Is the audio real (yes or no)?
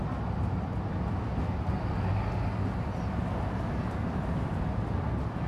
yes